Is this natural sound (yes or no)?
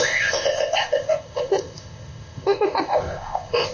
no